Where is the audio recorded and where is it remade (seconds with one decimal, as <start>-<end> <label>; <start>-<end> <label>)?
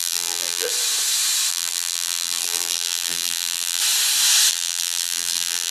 0.0-0.7 remade; 0.7-1.5 recorded; 1.5-3.8 remade; 3.8-4.5 recorded; 4.5-5.7 remade